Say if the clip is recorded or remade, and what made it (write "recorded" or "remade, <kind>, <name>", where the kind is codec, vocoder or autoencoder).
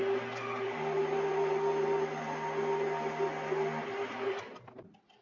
recorded